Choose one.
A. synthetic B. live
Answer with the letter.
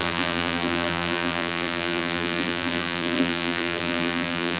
A